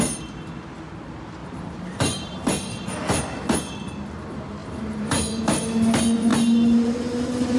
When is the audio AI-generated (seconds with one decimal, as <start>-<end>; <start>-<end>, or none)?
1.4-3.2; 4.6-5.4